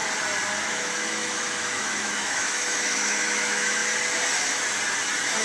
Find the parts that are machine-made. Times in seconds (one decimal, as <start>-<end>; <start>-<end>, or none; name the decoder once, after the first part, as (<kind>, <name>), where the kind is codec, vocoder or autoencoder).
0.6-3.8 (autoencoder, DAC-VAE)